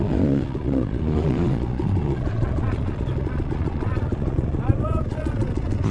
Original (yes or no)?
no